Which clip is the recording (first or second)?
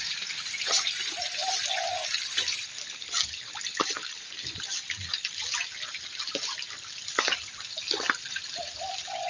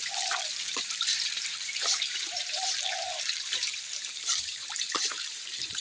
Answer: first